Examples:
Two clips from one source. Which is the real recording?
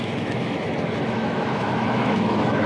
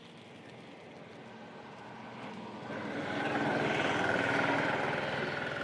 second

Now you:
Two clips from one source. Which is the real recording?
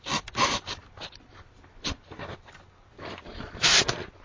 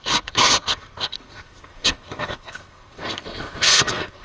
first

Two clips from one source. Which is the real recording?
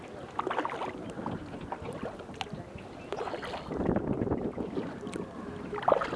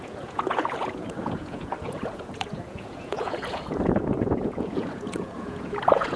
first